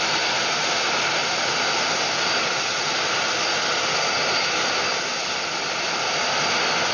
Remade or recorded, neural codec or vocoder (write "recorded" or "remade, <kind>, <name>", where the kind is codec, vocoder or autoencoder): recorded